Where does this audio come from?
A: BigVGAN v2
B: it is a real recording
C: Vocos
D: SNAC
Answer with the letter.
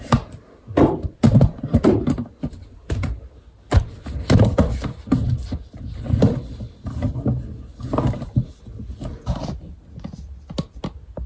B